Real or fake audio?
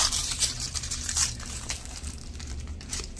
fake